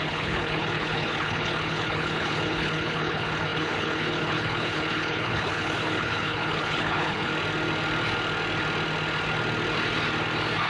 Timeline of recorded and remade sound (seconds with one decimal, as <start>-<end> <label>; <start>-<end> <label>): 0.0-7.3 remade; 7.3-10.7 recorded